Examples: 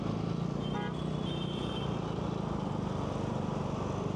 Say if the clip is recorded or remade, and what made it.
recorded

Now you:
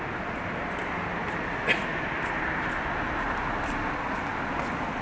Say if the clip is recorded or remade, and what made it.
recorded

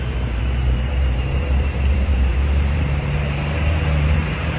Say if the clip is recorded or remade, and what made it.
remade, vocoder, BigVGAN v2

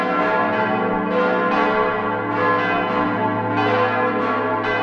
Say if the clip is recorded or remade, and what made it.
recorded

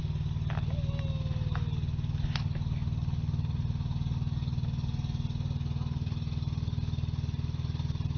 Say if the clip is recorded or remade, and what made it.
recorded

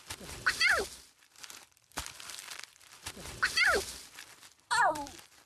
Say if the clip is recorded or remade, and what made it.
remade, vocoder, BigVGAN v2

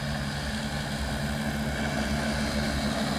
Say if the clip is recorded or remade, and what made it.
recorded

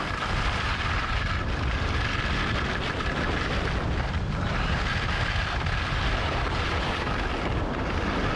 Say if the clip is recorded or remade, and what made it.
recorded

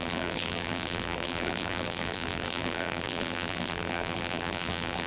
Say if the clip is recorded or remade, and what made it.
remade, vocoder, BigVGAN v2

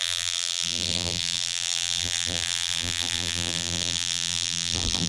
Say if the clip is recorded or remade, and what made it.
remade, vocoder, BigVGAN v2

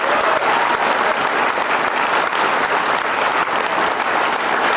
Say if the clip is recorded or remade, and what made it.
recorded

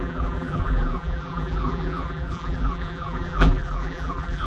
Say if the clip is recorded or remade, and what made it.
remade, vocoder, BigVGAN v2